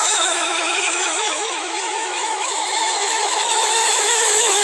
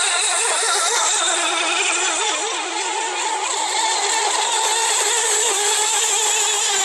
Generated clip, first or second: first